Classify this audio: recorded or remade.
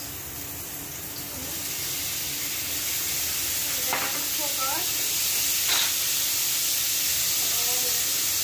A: recorded